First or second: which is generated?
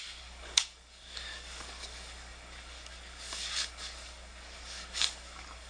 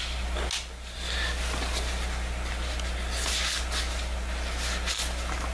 first